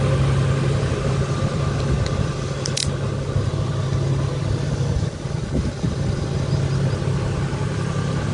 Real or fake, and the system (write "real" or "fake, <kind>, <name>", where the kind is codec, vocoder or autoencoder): real